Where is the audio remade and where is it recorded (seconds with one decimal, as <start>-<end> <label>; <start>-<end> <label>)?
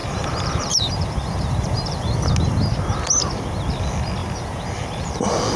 0.0-2.3 remade; 2.3-4.2 recorded; 4.2-5.1 remade; 5.1-5.6 recorded